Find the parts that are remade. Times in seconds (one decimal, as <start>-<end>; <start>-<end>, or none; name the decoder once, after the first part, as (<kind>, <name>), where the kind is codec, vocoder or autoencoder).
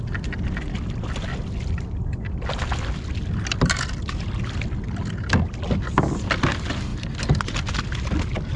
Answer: none